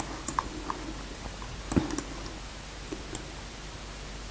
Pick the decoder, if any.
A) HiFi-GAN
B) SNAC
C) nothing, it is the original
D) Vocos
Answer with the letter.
C